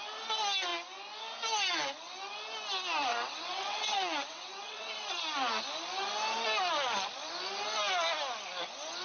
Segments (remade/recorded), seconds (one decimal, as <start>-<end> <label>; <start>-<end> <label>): 0.0-3.1 recorded; 3.1-5.1 remade; 5.1-9.0 recorded